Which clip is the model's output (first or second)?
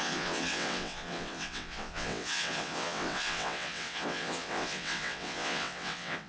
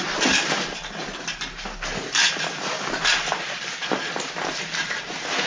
first